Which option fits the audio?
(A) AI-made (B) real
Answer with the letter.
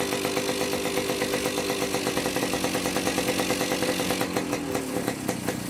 B